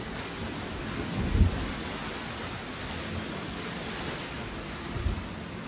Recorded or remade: recorded